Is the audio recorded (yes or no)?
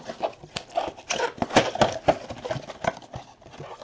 yes